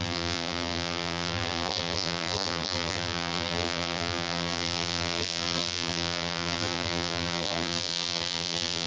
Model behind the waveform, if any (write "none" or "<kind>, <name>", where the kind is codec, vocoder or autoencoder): vocoder, BigVGAN v2